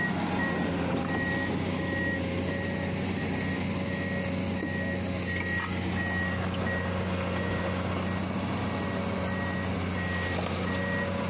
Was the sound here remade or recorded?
recorded